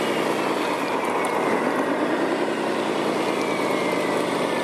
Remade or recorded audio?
recorded